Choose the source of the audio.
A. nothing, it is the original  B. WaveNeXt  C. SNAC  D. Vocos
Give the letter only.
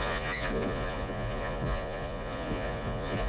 D